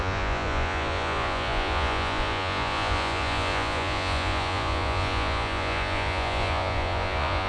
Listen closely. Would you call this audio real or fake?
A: fake